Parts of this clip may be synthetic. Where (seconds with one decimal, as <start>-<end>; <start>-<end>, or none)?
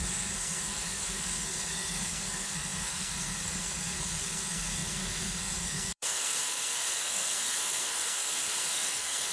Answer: 0.0-9.3